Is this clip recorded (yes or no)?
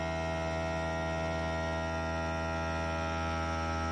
yes